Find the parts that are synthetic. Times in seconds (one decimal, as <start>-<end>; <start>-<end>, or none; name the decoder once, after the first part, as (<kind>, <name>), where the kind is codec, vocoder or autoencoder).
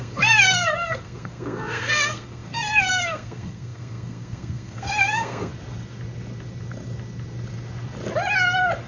0.0-5.5 (codec, SNAC)